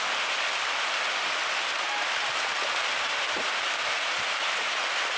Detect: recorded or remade recorded